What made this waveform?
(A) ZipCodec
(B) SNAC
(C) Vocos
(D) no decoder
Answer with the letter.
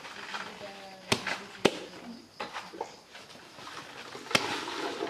D